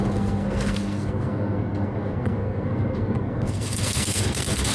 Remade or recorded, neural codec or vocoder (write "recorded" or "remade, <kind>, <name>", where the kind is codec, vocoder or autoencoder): remade, codec, SNAC